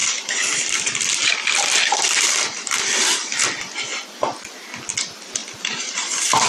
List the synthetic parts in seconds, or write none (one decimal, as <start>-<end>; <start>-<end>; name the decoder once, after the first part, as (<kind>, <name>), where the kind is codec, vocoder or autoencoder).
0.0-2.2 (vocoder, BigVGAN v2); 5.4-6.5